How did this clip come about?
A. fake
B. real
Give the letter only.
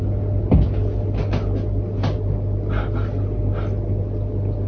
B